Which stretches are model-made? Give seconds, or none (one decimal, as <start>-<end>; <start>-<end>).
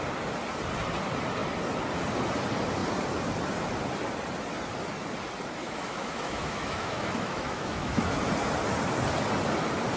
5.6-8.2